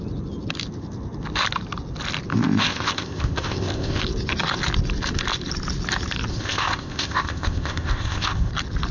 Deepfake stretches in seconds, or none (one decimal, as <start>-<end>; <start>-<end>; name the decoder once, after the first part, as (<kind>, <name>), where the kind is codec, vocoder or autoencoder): 2.3-4.0 (codec, ZipCodec); 6.3-8.5